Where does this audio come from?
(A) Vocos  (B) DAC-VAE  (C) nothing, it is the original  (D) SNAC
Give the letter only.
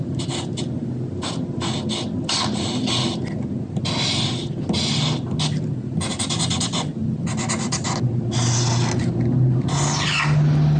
C